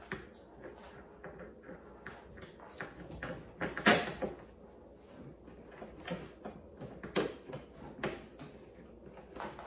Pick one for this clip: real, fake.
real